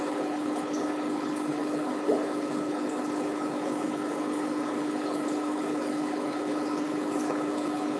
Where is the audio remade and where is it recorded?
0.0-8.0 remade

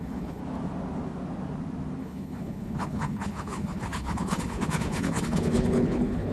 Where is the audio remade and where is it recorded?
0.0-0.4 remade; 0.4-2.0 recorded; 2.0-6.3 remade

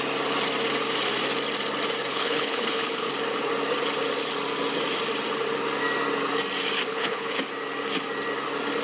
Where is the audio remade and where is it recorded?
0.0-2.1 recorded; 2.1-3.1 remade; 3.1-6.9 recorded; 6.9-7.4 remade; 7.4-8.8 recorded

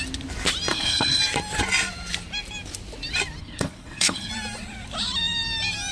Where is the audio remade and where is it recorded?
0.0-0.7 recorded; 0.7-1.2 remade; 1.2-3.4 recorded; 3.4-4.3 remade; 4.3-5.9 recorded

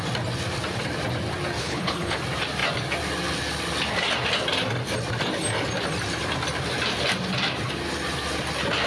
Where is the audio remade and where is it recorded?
0.0-1.6 recorded; 1.6-2.2 remade; 2.2-8.9 recorded